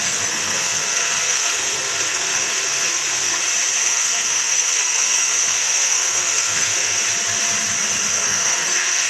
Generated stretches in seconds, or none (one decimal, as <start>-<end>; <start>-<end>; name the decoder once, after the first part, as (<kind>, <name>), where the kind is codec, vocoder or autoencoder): 0.0-3.3 (codec, SNAC); 3.8-7.0; 8.1-9.1